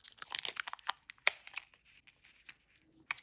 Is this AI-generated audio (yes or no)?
no